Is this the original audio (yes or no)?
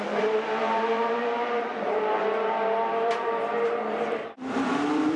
no